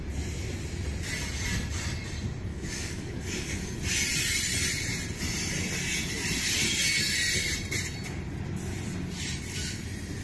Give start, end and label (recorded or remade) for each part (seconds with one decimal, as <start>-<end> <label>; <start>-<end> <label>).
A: 0.0-2.5 recorded; 2.5-3.8 remade; 3.8-10.2 recorded